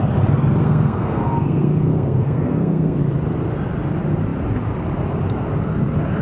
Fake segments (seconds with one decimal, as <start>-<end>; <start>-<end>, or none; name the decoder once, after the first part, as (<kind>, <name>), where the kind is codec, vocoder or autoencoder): 0.6-3.0 (codec, SNAC)